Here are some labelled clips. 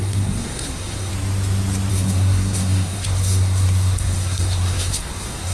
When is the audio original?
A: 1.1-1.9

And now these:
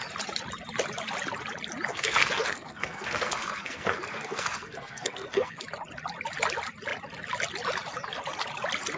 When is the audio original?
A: 0.0-1.9; 5.6-9.0